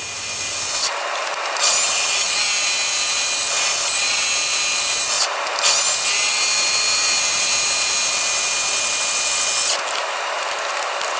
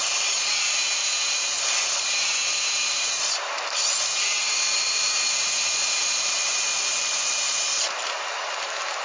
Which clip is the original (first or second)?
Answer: first